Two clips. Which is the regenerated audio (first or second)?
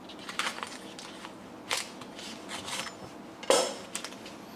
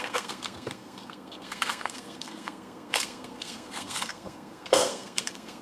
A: second